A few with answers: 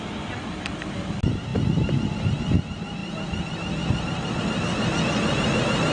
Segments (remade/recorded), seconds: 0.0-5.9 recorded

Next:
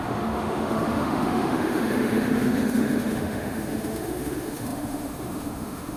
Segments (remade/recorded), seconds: 0.0-6.0 remade

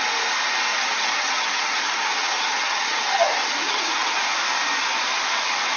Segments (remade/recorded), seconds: 0.0-0.7 recorded; 0.7-4.2 remade; 4.2-5.8 recorded

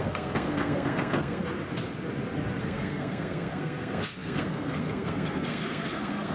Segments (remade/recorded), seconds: 0.0-1.4 remade; 1.4-2.6 recorded; 2.6-6.3 remade

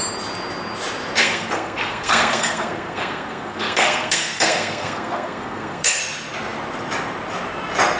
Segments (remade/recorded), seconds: 0.0-1.2 recorded; 1.2-6.0 remade; 6.0-8.0 recorded

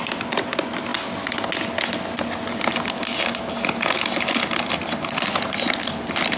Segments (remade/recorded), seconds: 0.0-0.9 remade; 0.9-4.7 recorded; 4.7-6.4 remade

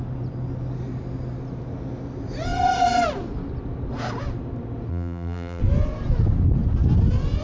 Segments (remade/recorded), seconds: 0.0-4.9 recorded; 4.9-5.6 remade; 5.6-7.4 recorded